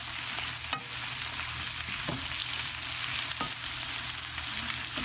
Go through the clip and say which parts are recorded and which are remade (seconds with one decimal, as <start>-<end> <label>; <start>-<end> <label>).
0.0-5.0 recorded